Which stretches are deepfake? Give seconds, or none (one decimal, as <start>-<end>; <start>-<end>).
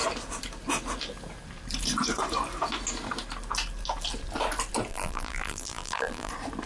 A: 4.9-6.3